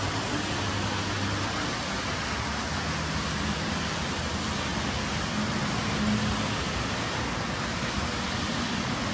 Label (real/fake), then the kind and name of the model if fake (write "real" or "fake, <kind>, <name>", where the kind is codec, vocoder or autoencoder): real